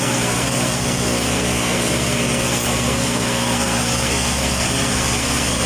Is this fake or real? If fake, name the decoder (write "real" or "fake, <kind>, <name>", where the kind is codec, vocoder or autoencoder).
fake, codec, SNAC